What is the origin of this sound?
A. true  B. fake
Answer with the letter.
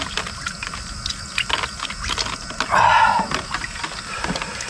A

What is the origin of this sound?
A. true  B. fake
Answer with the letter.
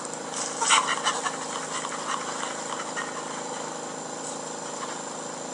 A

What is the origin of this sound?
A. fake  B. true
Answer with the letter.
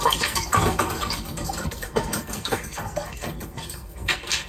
A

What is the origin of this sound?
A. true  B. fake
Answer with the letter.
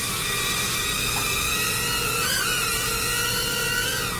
A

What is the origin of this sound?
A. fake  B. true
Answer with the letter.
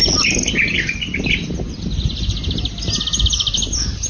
B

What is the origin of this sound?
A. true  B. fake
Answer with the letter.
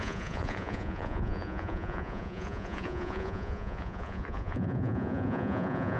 B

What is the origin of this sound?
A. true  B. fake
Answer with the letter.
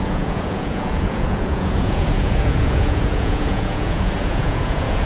B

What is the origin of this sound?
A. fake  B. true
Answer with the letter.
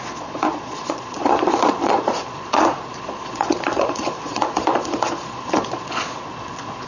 A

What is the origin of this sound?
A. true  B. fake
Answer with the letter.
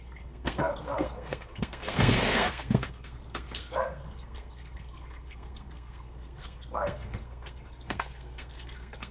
B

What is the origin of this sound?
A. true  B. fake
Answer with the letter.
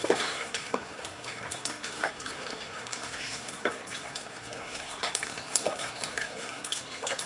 B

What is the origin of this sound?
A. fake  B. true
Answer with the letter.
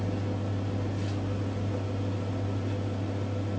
B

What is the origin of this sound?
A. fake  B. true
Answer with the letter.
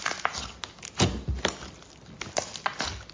B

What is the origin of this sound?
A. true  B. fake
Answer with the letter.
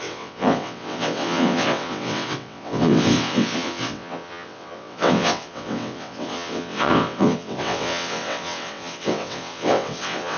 B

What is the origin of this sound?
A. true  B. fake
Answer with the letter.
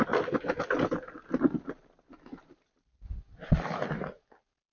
A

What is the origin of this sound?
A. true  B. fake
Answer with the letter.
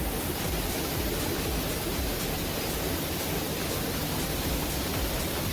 A